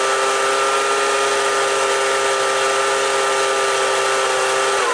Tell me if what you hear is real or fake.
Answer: real